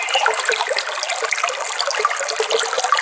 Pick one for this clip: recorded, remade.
remade